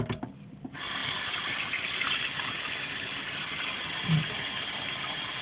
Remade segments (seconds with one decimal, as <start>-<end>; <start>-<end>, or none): none